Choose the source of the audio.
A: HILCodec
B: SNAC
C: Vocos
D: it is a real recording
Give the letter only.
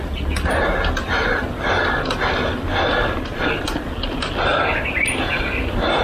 D